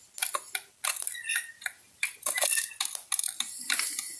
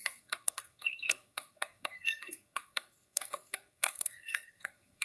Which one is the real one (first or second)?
first